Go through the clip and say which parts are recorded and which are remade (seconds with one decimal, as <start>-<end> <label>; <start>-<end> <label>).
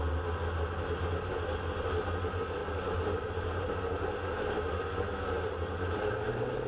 0.0-6.7 recorded